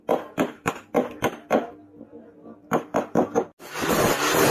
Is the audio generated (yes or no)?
no